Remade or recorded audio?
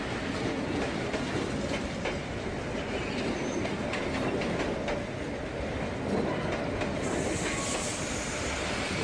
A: recorded